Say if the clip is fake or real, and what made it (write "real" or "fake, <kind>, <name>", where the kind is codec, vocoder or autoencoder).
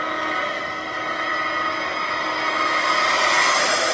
real